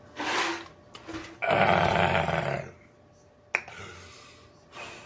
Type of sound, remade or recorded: recorded